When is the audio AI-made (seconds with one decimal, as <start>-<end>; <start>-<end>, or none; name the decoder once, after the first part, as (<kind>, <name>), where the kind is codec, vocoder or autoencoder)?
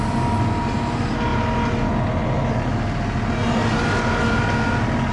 none